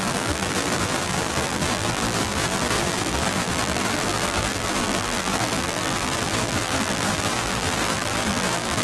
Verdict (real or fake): fake